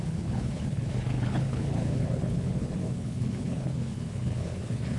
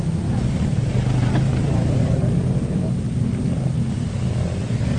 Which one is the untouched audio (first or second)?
second